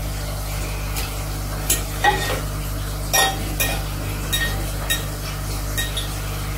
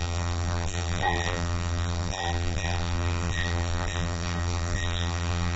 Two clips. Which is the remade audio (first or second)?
second